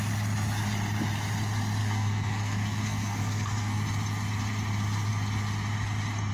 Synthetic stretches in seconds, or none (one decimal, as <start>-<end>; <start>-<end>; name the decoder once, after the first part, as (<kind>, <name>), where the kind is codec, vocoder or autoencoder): 1.8-3.8 (codec, SNAC)